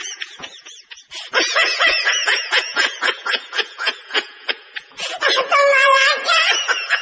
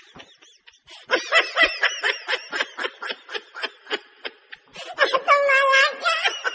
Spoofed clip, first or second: first